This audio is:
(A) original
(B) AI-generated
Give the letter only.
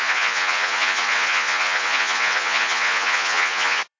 B